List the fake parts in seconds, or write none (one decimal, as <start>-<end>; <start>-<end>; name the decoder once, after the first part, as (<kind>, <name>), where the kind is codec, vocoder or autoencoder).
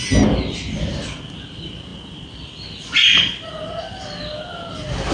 none